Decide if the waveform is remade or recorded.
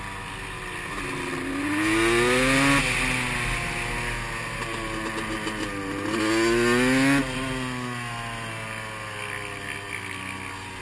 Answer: recorded